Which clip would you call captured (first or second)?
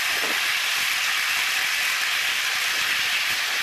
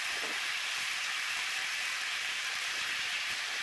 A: first